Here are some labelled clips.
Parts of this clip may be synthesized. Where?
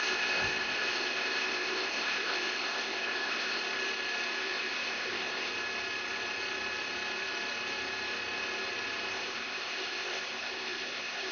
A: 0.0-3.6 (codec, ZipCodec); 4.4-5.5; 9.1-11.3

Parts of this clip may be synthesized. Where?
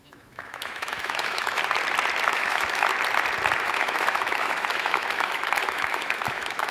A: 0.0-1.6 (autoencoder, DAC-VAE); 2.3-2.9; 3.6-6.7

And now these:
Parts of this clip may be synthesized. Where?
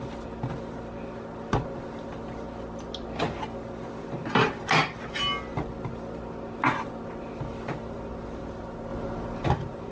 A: none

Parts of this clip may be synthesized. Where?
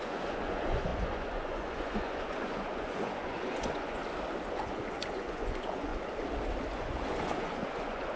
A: 0.0-4.0 (vocoder, Vocos); 4.5-5.9; 6.7-8.2